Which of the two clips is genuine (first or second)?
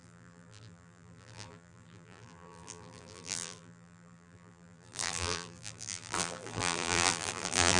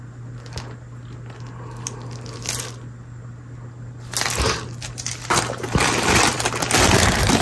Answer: second